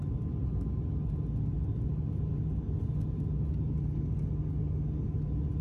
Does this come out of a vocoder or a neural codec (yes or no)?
no